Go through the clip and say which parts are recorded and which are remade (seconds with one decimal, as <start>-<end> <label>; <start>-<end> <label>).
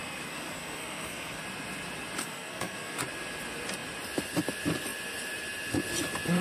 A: 0.0-1.4 remade; 1.4-2.2 recorded; 2.2-3.0 remade; 3.0-6.4 recorded